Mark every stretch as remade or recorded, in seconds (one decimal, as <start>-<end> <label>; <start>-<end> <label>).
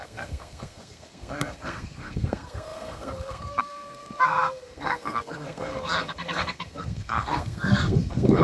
0.0-8.4 remade